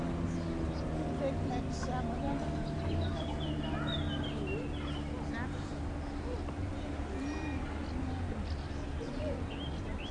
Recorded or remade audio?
recorded